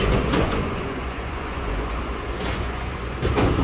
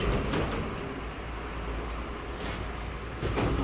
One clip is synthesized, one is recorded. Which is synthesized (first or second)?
first